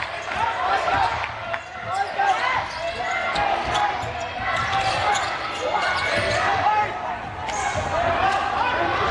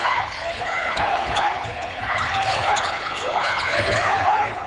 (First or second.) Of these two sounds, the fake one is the second